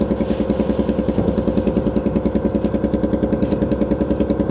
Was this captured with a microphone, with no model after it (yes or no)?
yes